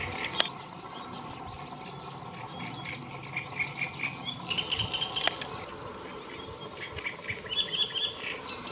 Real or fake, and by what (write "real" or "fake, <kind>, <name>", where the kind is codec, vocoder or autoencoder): real